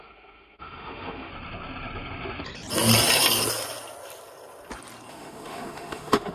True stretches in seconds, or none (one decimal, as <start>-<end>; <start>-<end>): 1.3-5.1